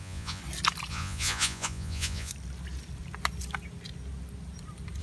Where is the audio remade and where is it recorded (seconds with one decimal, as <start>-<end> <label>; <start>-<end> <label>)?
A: 0.0-0.4 remade; 0.4-0.9 recorded; 0.9-2.3 remade; 2.3-5.0 recorded